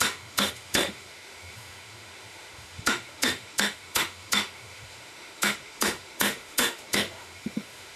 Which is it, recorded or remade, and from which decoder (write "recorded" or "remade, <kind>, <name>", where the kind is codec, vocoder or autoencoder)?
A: remade, autoencoder, DAC-VAE